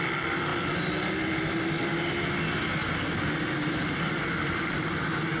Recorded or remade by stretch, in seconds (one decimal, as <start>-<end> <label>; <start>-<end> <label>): 0.0-5.4 recorded